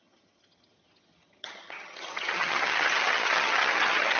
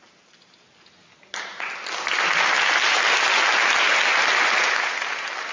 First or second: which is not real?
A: first